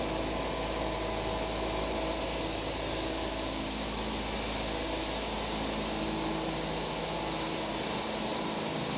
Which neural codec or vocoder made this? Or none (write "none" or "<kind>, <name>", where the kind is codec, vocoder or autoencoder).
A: none